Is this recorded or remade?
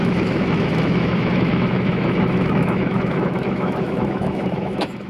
remade